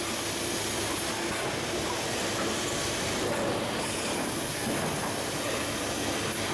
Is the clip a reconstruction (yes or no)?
no